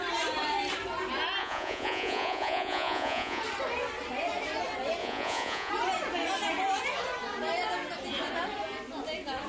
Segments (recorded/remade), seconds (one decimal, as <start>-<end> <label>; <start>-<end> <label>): 0.0-1.4 recorded; 1.4-3.4 remade; 3.4-5.0 recorded; 5.0-5.7 remade; 5.7-9.5 recorded